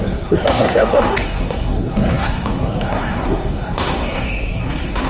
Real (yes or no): no